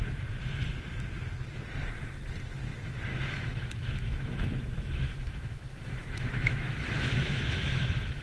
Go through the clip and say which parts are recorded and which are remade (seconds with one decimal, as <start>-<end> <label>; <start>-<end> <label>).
0.0-3.1 recorded; 3.1-8.2 remade